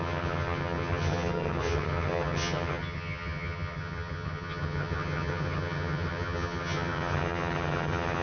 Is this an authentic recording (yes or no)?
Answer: no